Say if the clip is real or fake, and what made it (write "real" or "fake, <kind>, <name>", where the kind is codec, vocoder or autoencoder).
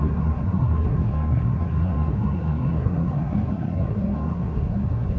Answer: fake, codec, SNAC